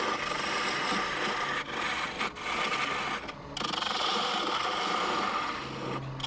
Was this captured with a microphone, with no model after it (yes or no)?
yes